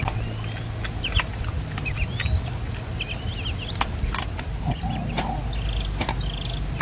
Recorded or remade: recorded